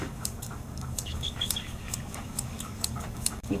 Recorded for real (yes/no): no